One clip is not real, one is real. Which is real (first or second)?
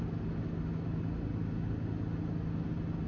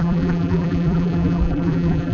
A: first